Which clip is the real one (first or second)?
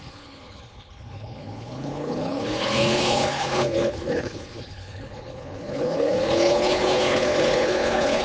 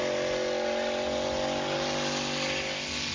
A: second